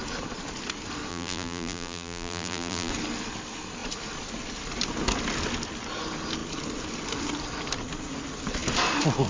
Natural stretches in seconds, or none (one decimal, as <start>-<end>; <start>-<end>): 0.0-1.1; 2.9-9.3